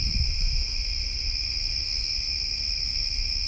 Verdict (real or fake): fake